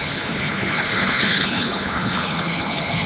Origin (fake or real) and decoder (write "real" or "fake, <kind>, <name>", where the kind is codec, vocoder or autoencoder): fake, codec, HILCodec